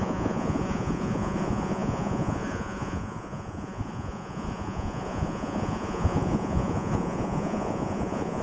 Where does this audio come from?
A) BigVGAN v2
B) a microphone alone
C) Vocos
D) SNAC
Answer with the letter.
C